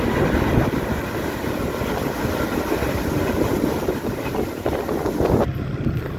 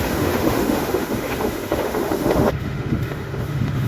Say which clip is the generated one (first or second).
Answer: second